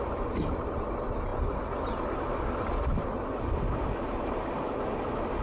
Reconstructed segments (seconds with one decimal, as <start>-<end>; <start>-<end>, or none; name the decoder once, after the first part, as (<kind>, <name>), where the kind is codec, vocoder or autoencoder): none